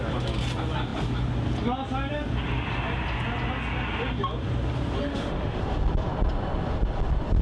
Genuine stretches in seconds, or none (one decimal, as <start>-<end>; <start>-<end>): 0.0-5.1; 5.6-7.4